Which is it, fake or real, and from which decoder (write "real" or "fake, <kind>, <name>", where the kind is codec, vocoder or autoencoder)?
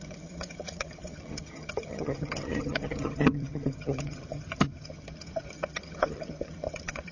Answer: fake, vocoder, HiFi-GAN